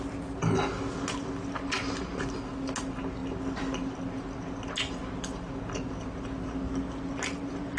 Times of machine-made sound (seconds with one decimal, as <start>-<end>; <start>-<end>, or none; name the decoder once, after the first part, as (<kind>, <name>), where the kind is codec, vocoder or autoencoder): none